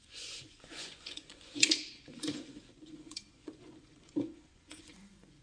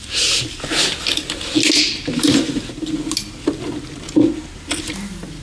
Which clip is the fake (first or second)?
first